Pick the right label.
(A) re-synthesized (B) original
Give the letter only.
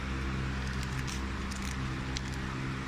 B